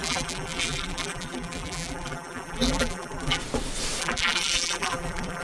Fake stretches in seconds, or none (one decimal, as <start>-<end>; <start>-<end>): 0.0-3.4; 4.0-5.4